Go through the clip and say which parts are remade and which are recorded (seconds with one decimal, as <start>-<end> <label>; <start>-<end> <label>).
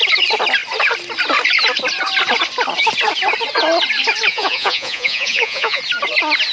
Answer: 0.0-4.3 recorded; 4.3-5.8 remade; 5.8-6.5 recorded